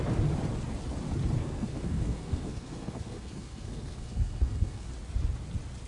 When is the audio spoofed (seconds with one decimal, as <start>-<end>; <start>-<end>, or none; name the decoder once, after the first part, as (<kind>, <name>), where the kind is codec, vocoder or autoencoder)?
1.4-4.9 (codec, SNAC)

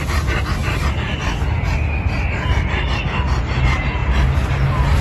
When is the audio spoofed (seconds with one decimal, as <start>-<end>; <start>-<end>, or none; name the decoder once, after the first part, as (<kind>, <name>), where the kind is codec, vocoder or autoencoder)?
none

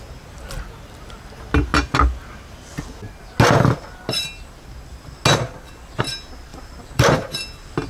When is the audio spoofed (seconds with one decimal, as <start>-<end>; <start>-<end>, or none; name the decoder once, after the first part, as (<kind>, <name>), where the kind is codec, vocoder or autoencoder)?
6.5-7.3 (vocoder, BigVGAN v2)